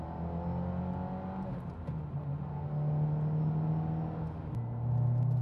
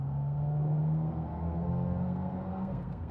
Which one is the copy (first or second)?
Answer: second